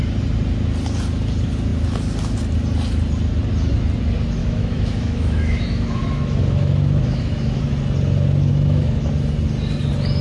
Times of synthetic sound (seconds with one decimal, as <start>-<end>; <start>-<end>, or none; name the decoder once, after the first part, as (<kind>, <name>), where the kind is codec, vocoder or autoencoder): 4.4-7.6 (autoencoder, DAC-VAE); 8.5-9.1